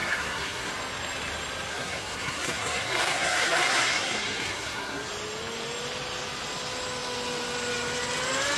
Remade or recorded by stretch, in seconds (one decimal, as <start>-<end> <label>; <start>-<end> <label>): 0.0-0.7 remade; 0.7-1.7 recorded; 1.7-5.1 remade; 5.1-8.6 recorded